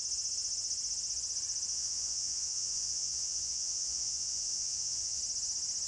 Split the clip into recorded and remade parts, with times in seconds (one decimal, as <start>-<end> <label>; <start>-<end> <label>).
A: 0.0-1.7 recorded; 1.7-5.2 remade; 5.2-5.9 recorded